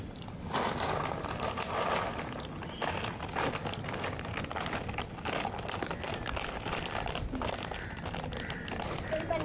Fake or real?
real